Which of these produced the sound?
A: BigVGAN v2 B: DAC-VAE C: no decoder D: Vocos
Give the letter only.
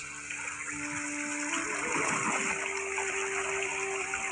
C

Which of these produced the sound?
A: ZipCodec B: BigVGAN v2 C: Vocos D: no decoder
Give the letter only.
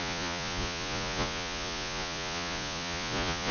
C